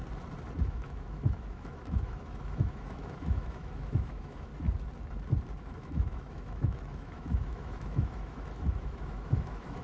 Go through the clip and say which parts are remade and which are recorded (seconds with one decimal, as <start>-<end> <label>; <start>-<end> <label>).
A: 0.0-0.6 recorded; 0.6-4.5 remade; 4.5-5.6 recorded; 5.6-9.8 remade